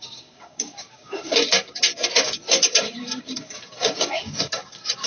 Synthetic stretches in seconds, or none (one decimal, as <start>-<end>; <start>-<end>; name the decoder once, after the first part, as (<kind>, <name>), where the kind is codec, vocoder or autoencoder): 0.0-5.1 (codec, DAC)